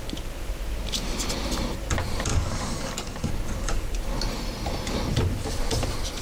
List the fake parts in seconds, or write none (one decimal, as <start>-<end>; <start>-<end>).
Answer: 2.3-3.3